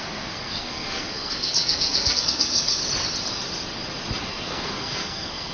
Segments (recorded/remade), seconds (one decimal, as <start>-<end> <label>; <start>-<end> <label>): 0.0-2.8 remade; 2.8-4.3 recorded; 4.3-5.5 remade